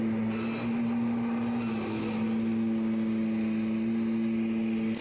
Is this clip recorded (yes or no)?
yes